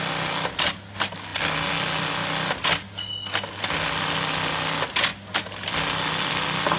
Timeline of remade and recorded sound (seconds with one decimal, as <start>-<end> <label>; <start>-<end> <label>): 0.0-6.8 recorded